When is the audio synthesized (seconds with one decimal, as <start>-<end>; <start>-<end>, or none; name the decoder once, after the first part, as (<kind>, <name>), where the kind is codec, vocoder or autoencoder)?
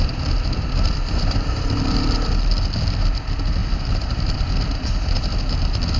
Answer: 0.0-6.0 (vocoder, BigVGAN v2)